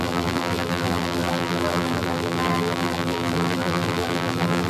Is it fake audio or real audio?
fake